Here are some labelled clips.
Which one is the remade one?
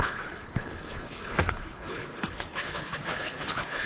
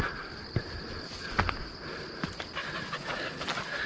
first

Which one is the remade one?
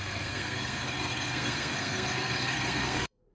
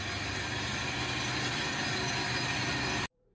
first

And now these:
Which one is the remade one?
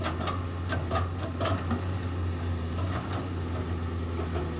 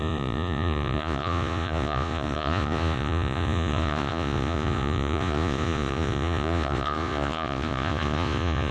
second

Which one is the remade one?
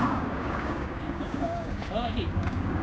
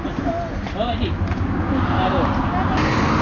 first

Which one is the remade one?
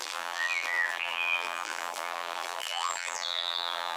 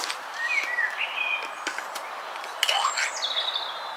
first